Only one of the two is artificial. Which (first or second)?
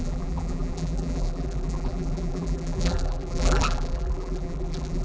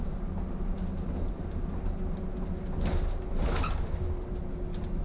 first